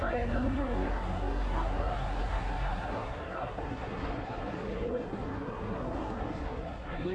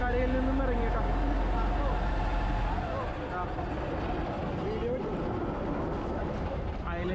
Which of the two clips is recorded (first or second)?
second